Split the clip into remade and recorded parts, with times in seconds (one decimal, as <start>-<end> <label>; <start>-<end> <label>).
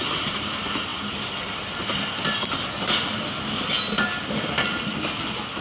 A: 0.0-5.6 recorded